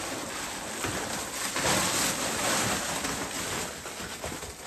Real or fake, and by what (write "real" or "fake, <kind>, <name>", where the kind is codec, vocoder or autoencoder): real